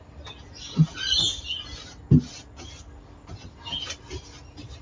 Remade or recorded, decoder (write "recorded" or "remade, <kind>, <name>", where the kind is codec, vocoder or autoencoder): recorded